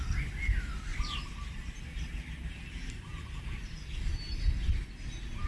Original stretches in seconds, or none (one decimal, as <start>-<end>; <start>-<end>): 0.0-0.9; 4.2-5.5